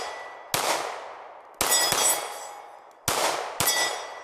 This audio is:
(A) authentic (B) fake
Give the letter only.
A